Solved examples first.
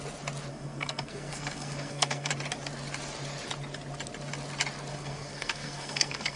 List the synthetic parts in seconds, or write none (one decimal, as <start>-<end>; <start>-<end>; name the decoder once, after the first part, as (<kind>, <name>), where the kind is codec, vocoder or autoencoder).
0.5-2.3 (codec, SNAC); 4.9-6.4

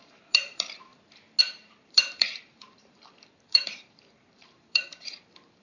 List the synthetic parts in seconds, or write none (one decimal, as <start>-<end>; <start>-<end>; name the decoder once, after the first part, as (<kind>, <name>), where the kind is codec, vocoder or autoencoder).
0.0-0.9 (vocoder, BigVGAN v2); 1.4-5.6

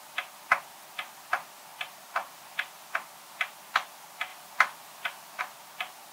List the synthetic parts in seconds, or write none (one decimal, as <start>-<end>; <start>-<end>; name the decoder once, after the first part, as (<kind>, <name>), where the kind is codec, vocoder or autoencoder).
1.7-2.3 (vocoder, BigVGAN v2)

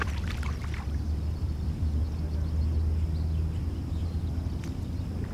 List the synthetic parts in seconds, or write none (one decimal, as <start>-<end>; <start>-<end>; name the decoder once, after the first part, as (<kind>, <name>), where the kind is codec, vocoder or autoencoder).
0.0-2.0 (vocoder, BigVGAN v2); 3.6-5.3